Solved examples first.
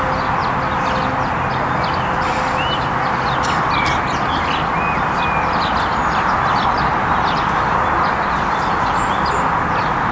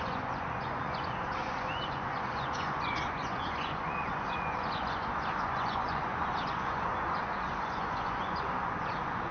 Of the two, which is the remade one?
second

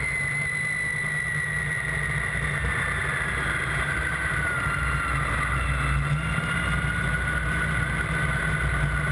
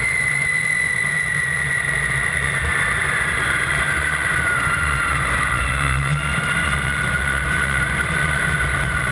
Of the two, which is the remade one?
second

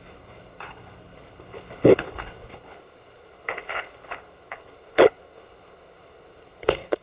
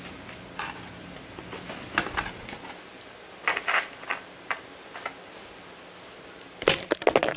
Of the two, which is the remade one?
first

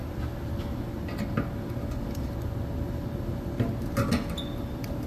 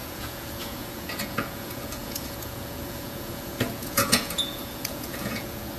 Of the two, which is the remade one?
second